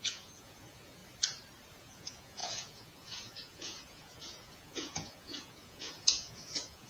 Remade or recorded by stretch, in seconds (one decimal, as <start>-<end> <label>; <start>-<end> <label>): 0.0-1.0 remade; 1.0-1.8 recorded; 1.8-6.9 remade